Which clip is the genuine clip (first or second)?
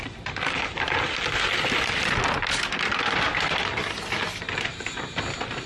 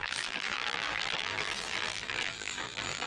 first